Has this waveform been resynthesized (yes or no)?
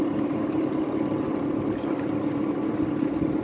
no